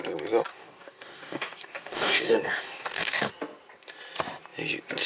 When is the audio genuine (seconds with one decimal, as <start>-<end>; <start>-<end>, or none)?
0.0-0.5; 3.3-5.1